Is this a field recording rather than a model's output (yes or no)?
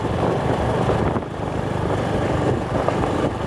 no